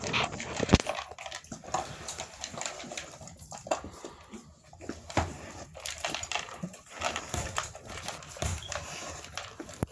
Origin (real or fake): fake